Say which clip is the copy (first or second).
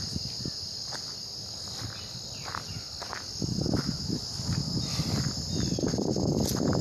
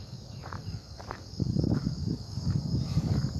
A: second